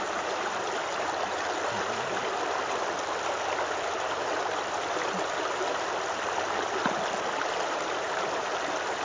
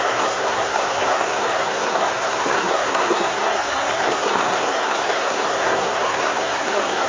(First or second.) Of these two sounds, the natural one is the first